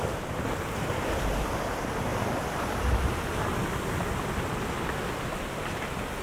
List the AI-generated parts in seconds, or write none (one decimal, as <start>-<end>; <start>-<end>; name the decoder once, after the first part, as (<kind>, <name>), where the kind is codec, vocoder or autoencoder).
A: none